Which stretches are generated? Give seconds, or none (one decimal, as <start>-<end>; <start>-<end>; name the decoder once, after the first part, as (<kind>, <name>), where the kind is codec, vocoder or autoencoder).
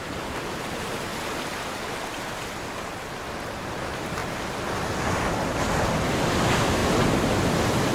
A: 0.0-1.1 (vocoder, BigVGAN v2); 3.6-4.2; 6.0-6.8